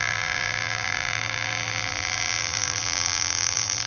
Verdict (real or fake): fake